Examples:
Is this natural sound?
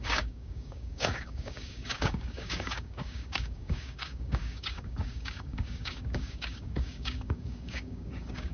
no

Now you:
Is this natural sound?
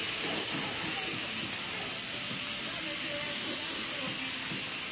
yes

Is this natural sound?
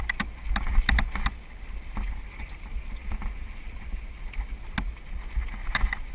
yes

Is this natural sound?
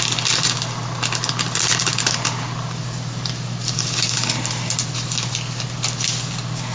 yes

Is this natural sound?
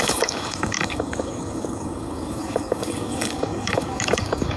no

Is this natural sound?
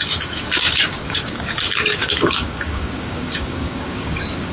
no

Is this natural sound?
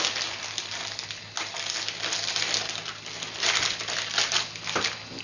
yes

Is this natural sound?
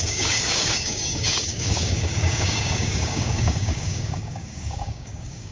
no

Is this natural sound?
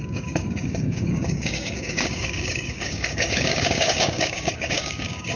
no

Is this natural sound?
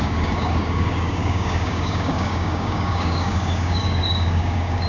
no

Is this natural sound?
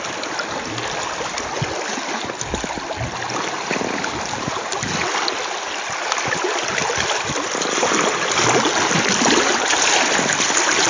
yes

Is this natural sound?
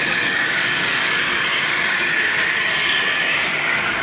no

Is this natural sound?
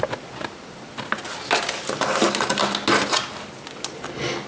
yes